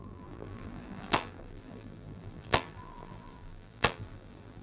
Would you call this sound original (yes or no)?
no